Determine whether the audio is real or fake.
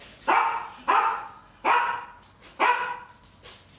real